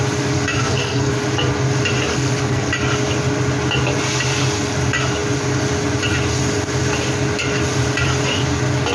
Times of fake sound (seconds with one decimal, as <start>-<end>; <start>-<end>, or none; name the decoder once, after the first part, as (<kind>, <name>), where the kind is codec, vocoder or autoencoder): 0.6-1.1 (codec, SNAC); 2.1-2.7